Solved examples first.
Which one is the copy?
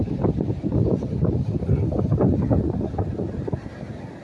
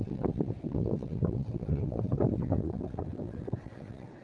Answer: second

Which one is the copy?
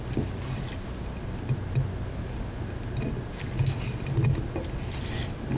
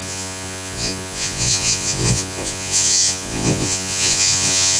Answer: second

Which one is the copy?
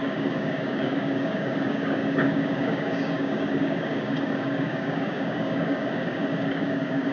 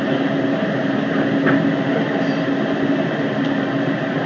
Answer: first